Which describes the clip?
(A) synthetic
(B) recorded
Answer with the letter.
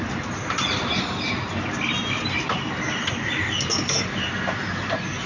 B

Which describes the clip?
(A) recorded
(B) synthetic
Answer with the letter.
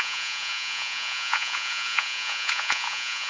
B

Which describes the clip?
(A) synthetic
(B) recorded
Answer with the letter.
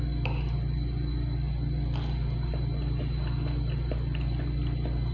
B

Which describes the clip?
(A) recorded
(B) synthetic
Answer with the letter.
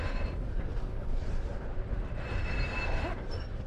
B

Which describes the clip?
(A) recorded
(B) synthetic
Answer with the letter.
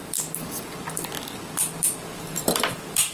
B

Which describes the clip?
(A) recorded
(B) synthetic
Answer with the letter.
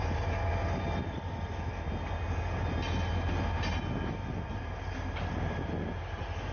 A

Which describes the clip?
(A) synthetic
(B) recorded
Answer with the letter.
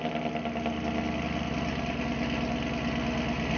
B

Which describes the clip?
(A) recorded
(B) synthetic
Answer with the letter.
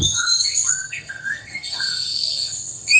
B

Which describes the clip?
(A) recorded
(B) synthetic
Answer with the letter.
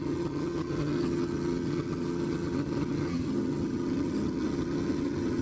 B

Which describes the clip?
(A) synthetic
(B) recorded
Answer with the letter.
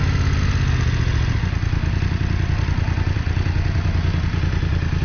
B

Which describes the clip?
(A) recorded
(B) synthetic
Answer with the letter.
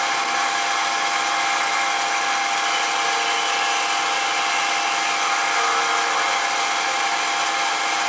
A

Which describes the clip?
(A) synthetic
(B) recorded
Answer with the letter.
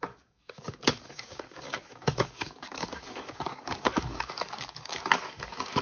A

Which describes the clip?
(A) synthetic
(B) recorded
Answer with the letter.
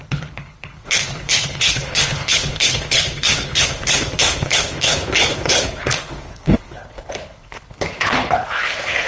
A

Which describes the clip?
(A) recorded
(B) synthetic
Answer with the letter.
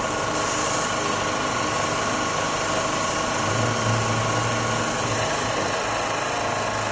A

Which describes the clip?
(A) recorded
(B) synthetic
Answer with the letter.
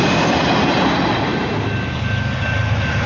A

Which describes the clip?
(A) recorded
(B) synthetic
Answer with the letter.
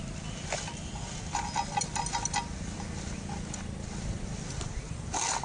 A